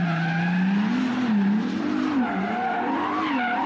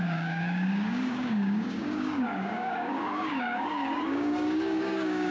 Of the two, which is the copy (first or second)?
second